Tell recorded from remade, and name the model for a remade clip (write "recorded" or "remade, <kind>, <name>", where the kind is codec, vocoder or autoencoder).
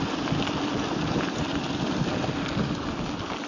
recorded